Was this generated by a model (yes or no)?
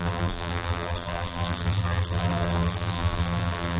yes